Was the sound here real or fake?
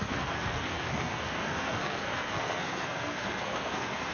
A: fake